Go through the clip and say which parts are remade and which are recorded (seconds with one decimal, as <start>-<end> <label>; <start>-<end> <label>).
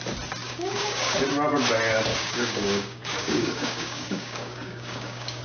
0.0-0.4 recorded; 0.4-1.2 remade; 1.2-2.1 recorded; 2.1-5.4 remade